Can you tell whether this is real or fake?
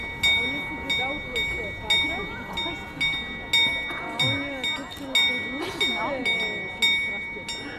real